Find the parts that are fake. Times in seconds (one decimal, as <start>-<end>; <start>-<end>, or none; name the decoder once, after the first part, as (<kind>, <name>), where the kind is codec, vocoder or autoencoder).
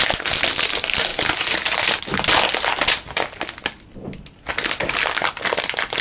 none